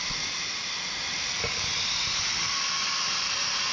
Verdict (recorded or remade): recorded